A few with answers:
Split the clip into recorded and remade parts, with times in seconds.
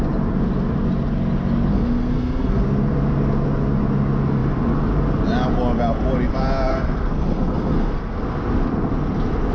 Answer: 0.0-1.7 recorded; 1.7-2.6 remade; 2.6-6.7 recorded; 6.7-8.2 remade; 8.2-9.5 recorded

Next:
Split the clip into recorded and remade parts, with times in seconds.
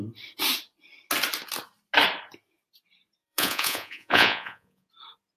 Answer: 0.0-3.2 recorded; 3.2-4.9 remade; 4.9-5.4 recorded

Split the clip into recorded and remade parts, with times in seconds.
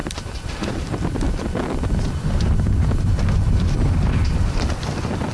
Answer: 0.0-5.3 recorded